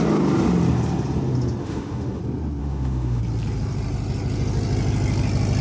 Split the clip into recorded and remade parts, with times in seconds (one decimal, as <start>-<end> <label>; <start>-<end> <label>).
0.0-1.6 recorded; 1.6-2.2 remade; 2.2-2.6 recorded; 2.6-3.2 remade; 3.2-5.6 recorded

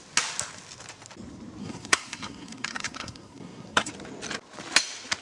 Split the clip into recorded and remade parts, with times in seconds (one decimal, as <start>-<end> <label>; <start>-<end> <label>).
0.0-1.6 recorded; 1.6-3.9 remade; 3.9-5.2 recorded

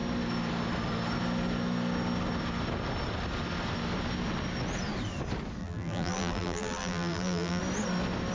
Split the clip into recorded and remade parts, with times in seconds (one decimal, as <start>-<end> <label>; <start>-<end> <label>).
0.0-5.6 recorded; 5.6-7.6 remade; 7.6-8.3 recorded

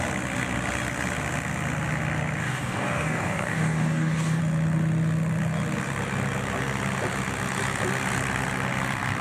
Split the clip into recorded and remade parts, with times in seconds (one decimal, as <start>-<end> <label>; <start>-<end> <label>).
0.0-2.4 recorded; 2.4-4.4 remade; 4.4-9.2 recorded